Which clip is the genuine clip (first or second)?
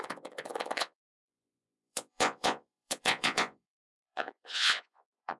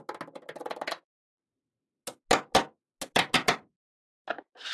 second